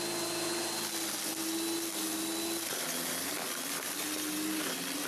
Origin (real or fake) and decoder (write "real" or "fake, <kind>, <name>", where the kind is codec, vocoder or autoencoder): real